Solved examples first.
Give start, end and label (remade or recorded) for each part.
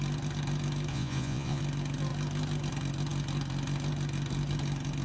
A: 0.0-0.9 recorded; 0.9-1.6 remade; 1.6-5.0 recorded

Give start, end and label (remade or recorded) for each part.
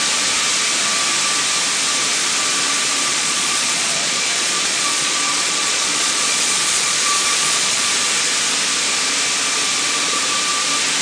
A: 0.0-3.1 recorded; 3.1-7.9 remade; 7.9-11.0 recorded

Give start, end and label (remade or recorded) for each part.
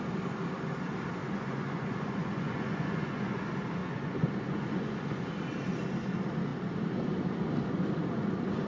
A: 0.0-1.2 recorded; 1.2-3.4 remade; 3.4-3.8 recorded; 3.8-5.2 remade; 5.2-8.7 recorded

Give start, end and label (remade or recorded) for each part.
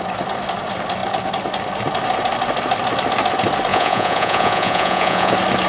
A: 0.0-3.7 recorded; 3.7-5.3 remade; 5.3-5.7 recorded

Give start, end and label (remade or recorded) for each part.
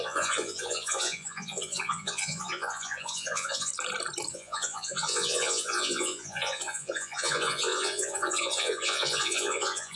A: 0.0-3.7 remade; 3.7-4.3 recorded; 4.3-10.0 remade